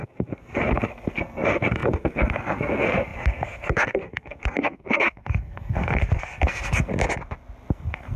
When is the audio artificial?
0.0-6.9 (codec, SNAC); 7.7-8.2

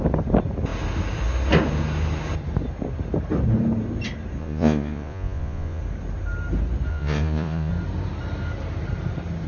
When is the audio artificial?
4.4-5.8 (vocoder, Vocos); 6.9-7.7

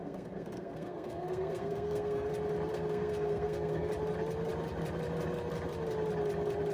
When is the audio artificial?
0.0-2.3 (codec, SNAC); 2.7-3.9

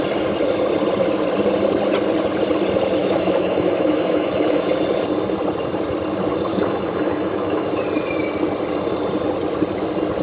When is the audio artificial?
3.0-4.7 (autoencoder, DAC-VAE); 6.5-7.7

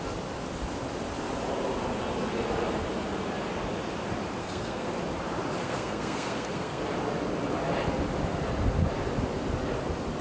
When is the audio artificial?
4.4-4.9 (codec, SNAC); 5.6-6.8

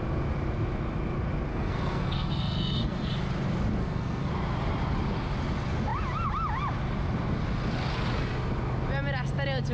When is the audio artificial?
1.5-3.1 (codec, SNAC); 3.8-4.3

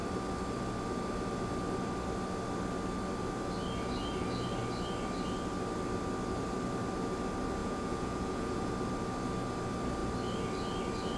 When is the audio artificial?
7.6-8.7 (vocoder, Vocos)